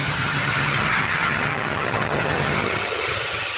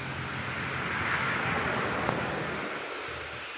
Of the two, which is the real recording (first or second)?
second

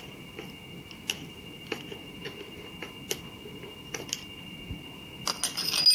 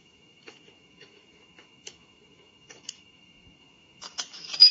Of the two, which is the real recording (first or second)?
first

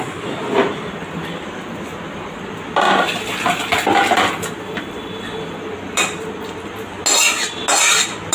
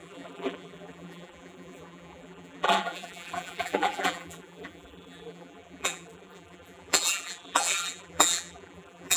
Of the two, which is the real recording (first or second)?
first